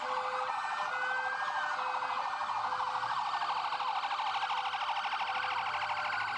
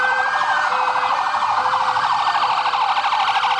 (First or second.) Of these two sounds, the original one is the first